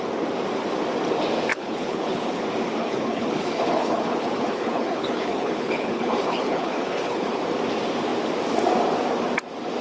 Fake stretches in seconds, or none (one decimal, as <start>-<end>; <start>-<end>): 1.5-2.4; 2.8-7.4